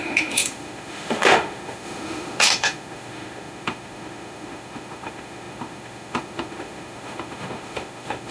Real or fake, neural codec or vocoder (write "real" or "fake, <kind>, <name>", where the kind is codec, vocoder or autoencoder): fake, autoencoder, DAC-VAE